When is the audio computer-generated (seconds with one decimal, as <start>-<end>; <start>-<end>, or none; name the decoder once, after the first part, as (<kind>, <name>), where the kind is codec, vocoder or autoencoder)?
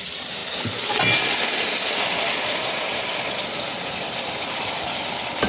none